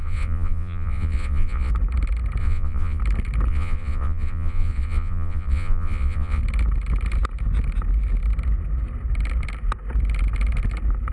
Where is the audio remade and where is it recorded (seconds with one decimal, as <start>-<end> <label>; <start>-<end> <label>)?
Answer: 0.0-1.7 remade; 1.7-2.4 recorded; 2.4-3.0 remade; 3.0-3.5 recorded; 3.5-6.4 remade; 6.4-11.1 recorded